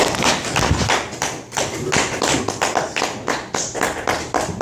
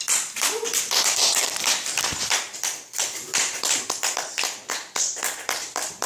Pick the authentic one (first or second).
first